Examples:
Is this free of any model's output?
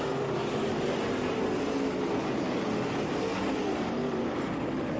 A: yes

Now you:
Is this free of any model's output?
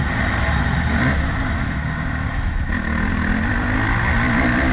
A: yes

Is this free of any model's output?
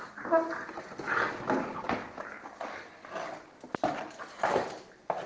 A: yes